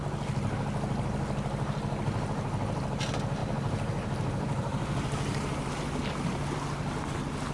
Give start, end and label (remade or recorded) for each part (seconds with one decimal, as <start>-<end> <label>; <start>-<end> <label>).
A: 0.0-3.4 recorded; 3.4-5.7 remade; 5.7-7.5 recorded